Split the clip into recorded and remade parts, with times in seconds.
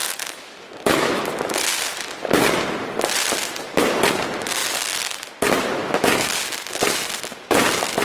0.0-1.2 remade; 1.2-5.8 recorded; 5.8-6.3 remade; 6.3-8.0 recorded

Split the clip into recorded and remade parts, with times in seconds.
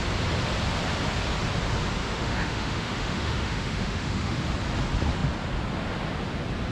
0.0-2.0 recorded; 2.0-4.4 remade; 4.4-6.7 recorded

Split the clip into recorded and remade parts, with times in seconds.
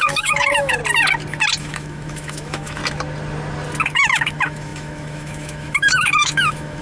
0.0-0.8 remade; 0.8-1.6 recorded; 1.6-2.8 remade; 2.8-3.8 recorded; 3.8-6.8 remade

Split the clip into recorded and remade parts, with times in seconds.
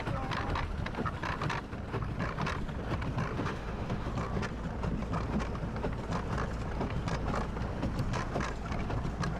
0.0-3.4 recorded; 3.4-4.1 remade; 4.1-9.4 recorded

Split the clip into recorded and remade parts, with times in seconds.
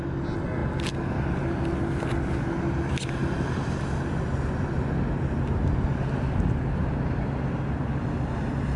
0.0-8.8 recorded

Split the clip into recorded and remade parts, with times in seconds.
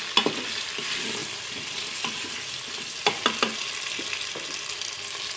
0.0-5.4 recorded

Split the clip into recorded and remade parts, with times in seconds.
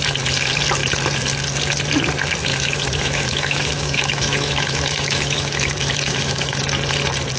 0.0-2.5 recorded; 2.5-6.6 remade; 6.6-7.4 recorded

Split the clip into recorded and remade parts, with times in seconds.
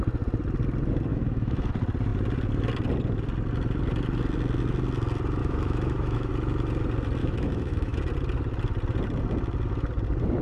0.0-1.1 recorded; 1.1-1.7 remade; 1.7-5.4 recorded; 5.4-6.3 remade; 6.3-7.2 recorded; 7.2-8.0 remade; 8.0-10.4 recorded